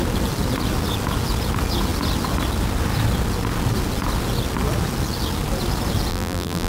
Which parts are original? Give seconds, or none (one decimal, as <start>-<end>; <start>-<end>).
0.0-6.1